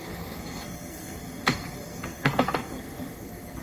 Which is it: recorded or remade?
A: remade